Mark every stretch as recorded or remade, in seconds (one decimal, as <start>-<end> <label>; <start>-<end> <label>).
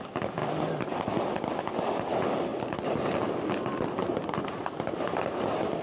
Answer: 0.0-5.8 recorded